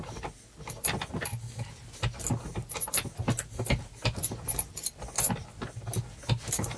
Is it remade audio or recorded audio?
recorded